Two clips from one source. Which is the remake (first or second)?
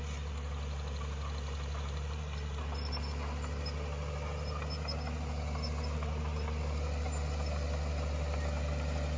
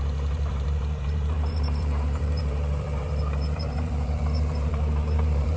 second